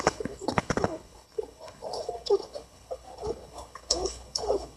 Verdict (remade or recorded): remade